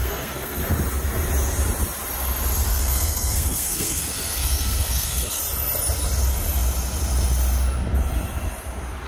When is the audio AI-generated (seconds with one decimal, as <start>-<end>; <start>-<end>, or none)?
0.0-0.6; 2.7-5.4